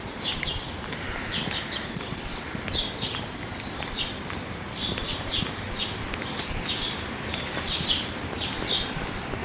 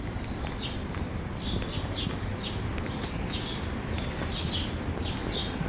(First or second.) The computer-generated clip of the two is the first